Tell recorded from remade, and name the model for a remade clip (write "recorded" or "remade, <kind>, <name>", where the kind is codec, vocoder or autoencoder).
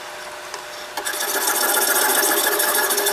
recorded